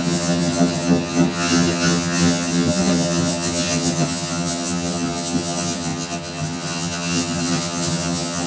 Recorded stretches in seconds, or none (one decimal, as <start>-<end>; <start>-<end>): none